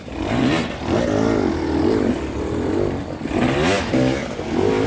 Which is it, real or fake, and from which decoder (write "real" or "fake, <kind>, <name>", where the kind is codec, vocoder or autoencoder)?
real